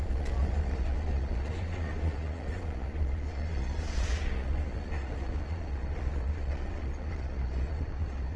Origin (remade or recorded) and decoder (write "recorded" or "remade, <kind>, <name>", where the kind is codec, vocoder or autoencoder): remade, vocoder, Vocos